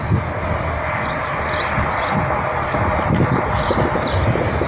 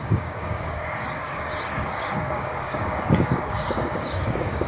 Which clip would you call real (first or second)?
first